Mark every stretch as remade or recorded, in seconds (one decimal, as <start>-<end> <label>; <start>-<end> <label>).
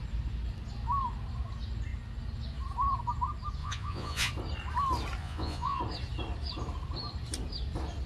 0.0-3.6 recorded; 3.6-4.3 remade; 4.3-5.2 recorded; 5.2-5.8 remade; 5.8-8.1 recorded